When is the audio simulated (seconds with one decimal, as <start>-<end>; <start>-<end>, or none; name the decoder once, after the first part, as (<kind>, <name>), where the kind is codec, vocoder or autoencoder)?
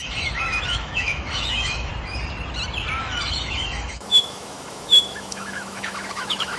0.0-1.9 (autoencoder, DAC-VAE); 3.0-6.6